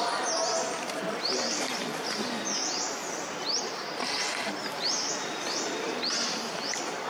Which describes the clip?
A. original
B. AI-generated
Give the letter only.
A